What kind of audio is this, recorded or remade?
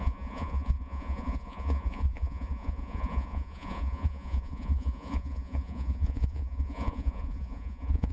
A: remade